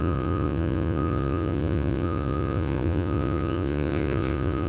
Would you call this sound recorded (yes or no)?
no